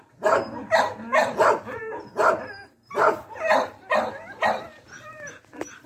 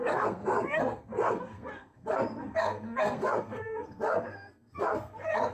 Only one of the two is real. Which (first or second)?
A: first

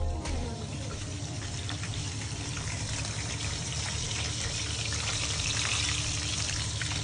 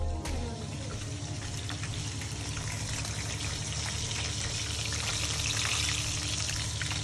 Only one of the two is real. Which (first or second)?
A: second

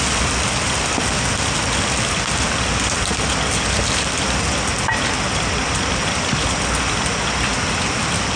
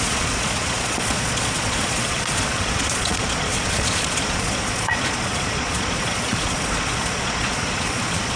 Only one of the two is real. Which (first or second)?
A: first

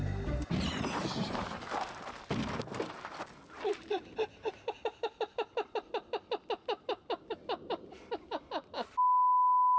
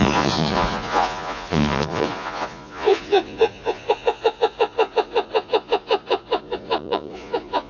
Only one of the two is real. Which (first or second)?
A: first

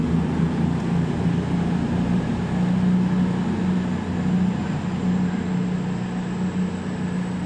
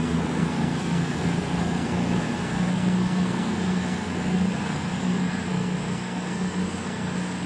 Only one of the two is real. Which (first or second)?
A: first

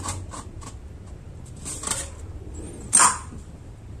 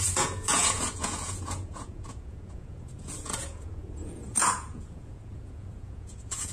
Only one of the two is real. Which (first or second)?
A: first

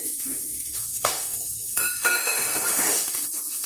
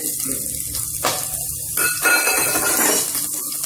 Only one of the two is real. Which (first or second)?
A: second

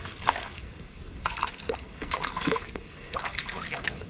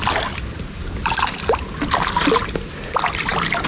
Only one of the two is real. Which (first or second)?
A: second